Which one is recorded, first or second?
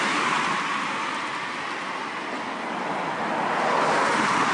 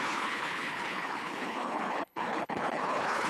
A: first